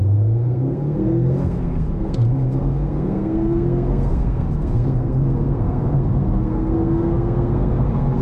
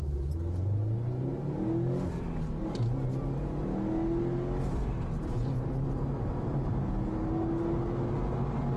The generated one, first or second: first